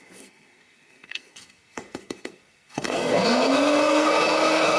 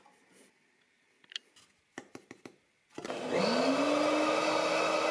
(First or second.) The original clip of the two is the second